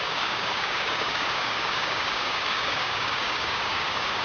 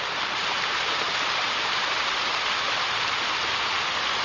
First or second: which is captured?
second